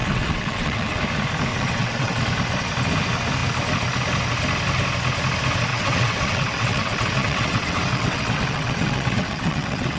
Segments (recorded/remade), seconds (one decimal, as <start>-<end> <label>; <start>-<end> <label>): 0.0-1.0 remade; 1.0-1.5 recorded; 1.5-2.2 remade; 2.2-5.7 recorded; 5.7-10.0 remade